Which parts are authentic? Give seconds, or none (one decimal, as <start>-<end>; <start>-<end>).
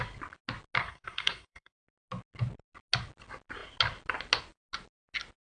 0.0-0.8; 1.8-5.5